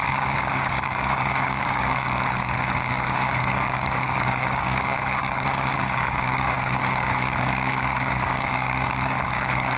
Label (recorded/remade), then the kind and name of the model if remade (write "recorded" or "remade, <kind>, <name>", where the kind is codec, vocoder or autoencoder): remade, codec, DAC